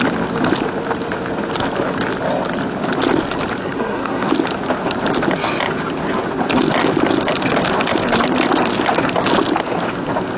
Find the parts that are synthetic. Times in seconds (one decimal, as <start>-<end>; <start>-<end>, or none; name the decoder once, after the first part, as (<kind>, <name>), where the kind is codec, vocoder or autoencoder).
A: 3.6-4.3 (codec, SNAC)